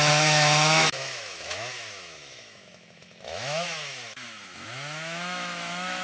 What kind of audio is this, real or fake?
fake